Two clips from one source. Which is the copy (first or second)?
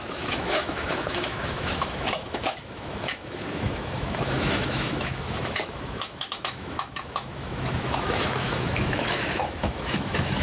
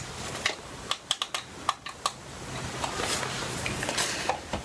first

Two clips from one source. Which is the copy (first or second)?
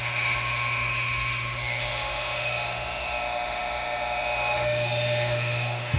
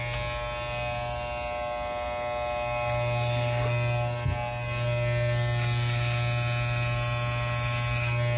first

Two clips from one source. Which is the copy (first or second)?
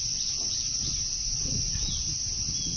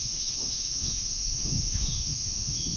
second